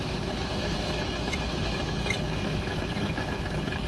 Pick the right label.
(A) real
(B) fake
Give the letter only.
B